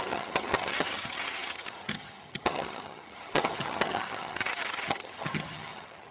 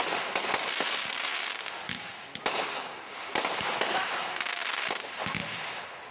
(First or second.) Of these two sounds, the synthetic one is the first